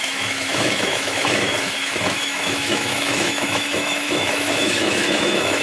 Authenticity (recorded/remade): remade